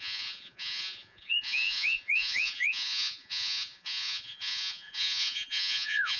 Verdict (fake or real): fake